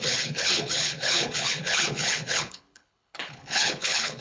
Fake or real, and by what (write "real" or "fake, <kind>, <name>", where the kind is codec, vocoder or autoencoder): fake, codec, HILCodec